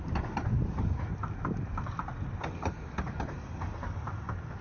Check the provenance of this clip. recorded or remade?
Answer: recorded